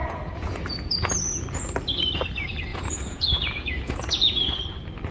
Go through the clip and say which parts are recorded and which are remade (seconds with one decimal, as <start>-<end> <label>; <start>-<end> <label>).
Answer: 0.0-1.2 remade; 1.2-2.7 recorded; 2.7-4.6 remade; 4.6-5.1 recorded